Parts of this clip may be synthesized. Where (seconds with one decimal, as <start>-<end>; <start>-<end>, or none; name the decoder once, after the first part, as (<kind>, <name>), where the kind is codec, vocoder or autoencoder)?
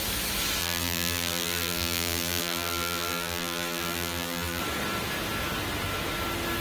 0.6-4.6 (vocoder, BigVGAN v2)